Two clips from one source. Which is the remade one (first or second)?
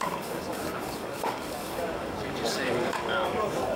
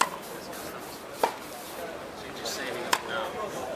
first